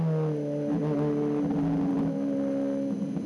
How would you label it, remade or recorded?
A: recorded